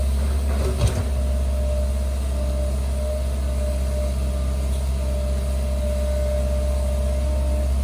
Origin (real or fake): real